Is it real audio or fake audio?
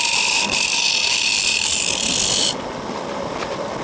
real